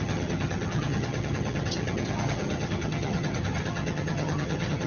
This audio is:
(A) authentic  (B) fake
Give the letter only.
B